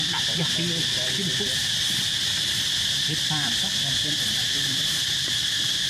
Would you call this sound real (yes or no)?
no